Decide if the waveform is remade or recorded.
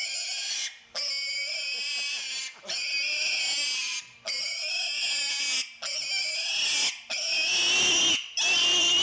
recorded